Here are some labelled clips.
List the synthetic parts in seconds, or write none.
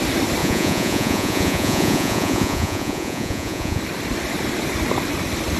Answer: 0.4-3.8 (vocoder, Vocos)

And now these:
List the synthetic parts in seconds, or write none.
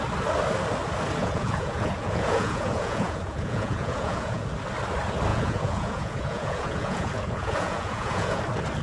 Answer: 1.2-4.4 (vocoder, Vocos); 5.3-8.4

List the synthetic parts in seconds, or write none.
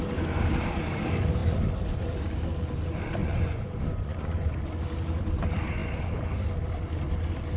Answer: 3.2-4.5 (vocoder, Vocos)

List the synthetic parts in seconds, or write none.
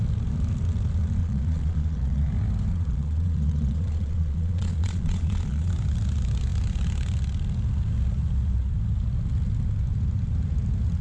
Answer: 1.2-2.3 (vocoder, Vocos); 2.7-5.7